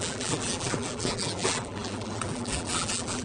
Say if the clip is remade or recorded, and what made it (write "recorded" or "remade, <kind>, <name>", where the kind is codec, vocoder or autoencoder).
remade, vocoder, BigVGAN v2